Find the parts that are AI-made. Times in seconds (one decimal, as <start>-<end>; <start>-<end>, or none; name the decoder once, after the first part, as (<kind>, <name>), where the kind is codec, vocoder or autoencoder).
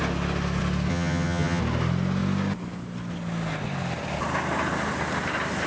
0.9-1.6 (vocoder, HiFi-GAN)